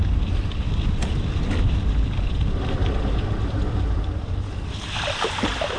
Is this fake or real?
fake